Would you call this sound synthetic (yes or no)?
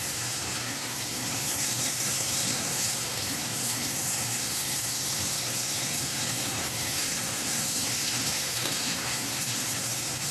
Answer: yes